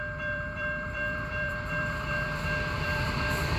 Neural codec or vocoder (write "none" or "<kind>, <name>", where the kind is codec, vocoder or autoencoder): vocoder, BigVGAN v2